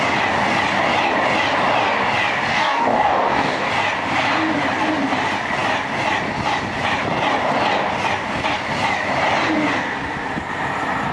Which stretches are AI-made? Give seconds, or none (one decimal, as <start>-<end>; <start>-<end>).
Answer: 2.5-3.7